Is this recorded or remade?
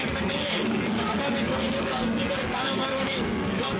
remade